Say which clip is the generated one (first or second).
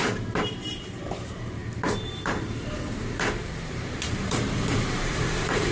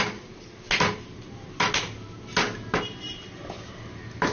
first